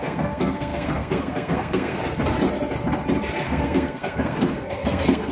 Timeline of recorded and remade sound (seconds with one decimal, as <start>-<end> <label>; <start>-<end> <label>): 0.0-2.0 remade; 2.0-3.3 recorded; 3.3-5.3 remade